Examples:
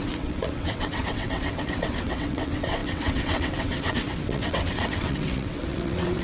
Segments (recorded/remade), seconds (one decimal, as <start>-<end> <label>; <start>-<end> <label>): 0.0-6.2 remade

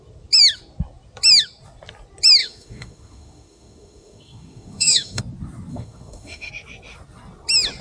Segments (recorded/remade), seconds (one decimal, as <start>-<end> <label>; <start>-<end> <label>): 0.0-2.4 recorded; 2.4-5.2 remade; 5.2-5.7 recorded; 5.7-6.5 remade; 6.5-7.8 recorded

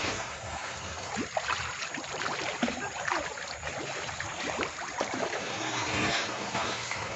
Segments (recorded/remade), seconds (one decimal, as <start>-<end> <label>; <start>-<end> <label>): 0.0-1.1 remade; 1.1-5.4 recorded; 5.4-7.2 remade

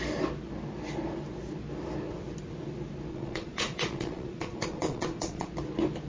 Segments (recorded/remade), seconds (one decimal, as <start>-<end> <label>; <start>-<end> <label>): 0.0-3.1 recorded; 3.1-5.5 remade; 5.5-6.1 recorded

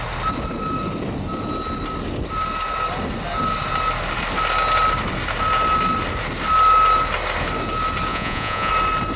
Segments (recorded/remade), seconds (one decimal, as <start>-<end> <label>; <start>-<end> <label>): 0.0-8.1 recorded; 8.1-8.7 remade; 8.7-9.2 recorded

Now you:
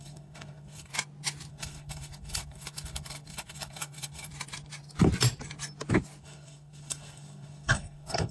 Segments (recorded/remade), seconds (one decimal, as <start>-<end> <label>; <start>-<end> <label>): 0.0-0.9 remade; 0.9-1.5 recorded; 1.5-4.3 remade; 4.3-6.2 recorded; 6.2-8.3 remade

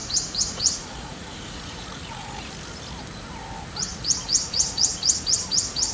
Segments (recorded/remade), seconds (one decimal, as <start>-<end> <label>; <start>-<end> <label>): 0.0-2.5 remade; 2.5-3.9 recorded; 3.9-5.2 remade; 5.2-5.9 recorded

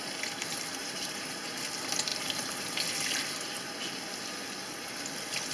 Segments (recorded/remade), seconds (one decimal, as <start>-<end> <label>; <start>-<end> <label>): 0.0-0.8 recorded; 0.8-1.6 remade; 1.6-2.1 recorded; 2.1-2.8 remade; 2.8-5.5 recorded